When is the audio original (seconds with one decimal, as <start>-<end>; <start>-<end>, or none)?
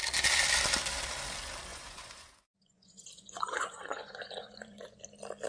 0.0-1.7; 5.0-5.5